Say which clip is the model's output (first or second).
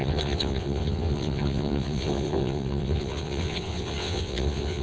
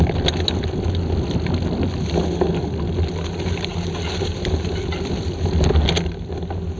first